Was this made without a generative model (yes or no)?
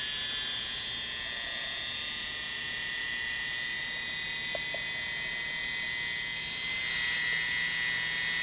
yes